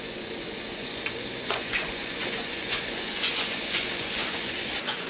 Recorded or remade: remade